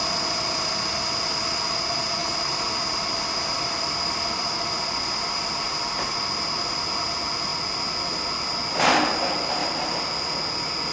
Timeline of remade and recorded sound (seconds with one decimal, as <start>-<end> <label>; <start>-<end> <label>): 0.0-2.2 recorded; 2.2-6.1 remade; 6.1-9.6 recorded; 9.6-10.1 remade; 10.1-10.9 recorded